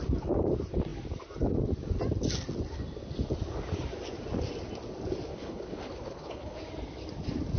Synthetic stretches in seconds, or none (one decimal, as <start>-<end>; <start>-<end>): 5.3-6.6